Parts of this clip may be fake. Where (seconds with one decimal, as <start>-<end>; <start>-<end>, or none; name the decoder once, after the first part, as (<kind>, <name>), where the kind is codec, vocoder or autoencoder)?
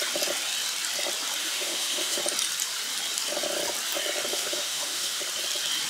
1.4-2.2 (autoencoder, DAC-VAE); 4.3-5.2